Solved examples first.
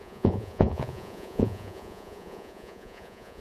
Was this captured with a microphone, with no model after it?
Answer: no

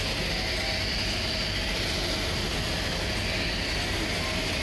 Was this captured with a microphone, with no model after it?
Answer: yes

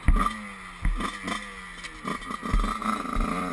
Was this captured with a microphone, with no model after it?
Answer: yes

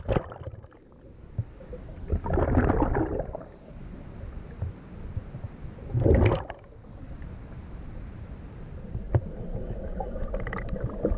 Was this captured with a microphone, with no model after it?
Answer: yes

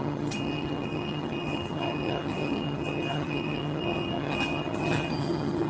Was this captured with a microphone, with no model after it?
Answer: no